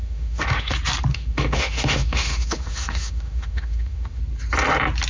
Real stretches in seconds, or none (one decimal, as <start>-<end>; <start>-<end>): 0.7-1.1; 4.2-5.1